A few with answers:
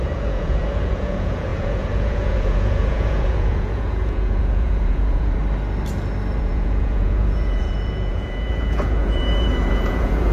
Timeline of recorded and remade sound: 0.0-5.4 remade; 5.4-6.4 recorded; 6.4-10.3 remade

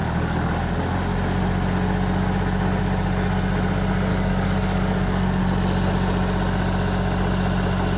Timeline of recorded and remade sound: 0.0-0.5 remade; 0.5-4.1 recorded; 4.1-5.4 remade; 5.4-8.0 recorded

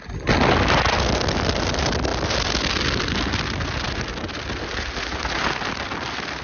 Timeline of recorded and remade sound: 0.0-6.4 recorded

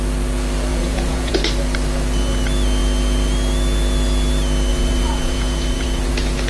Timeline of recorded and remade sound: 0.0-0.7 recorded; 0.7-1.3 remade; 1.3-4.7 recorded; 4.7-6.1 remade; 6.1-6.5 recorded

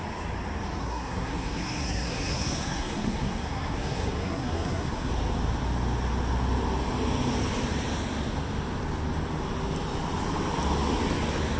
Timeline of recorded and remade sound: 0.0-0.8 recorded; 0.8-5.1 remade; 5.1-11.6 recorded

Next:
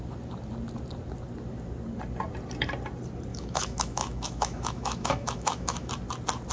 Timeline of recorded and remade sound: 0.0-3.3 recorded; 3.3-5.9 remade; 5.9-6.5 recorded